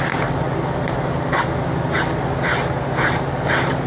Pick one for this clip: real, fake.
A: real